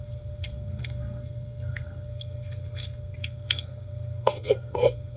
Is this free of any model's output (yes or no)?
no